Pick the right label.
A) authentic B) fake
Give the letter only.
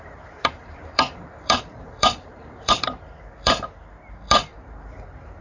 B